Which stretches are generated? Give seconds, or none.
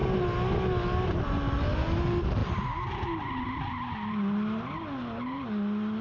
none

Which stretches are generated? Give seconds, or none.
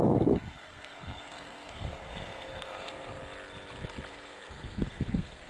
0.0-3.2; 4.1-5.5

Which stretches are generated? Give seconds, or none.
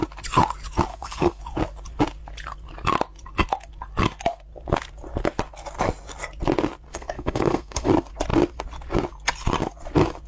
0.9-1.4; 6.9-7.9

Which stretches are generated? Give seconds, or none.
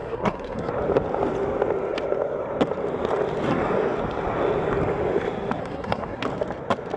0.0-0.7; 5.6-6.2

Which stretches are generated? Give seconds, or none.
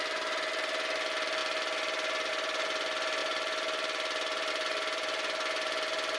none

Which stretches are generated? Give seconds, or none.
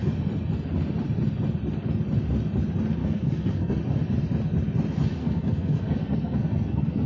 3.0-3.8; 5.2-7.1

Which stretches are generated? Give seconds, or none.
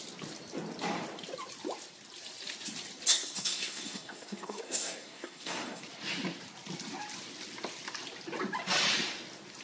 3.1-5.8